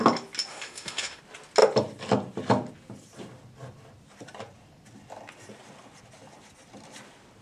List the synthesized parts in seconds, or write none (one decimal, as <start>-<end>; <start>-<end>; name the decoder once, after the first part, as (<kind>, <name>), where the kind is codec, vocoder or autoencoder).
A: 0.5-1.2 (autoencoder, DAC-VAE)